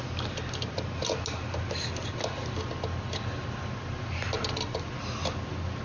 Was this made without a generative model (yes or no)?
yes